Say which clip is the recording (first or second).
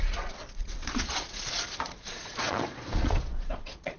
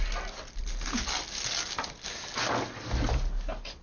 second